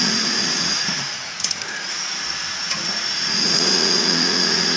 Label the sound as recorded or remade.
remade